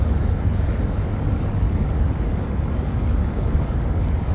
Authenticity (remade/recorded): remade